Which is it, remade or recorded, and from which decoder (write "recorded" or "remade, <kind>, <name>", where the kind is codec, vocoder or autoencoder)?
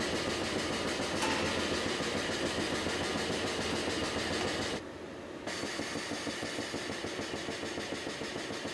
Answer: recorded